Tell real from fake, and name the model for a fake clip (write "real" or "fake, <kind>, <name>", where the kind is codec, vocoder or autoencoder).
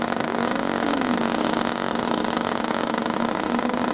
fake, codec, DAC